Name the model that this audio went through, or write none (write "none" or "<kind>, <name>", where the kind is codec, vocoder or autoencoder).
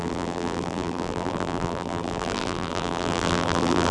vocoder, BigVGAN v2